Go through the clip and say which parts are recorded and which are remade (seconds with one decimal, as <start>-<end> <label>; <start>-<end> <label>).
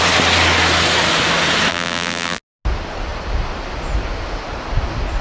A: 0.0-1.7 recorded; 1.7-2.4 remade; 2.4-5.2 recorded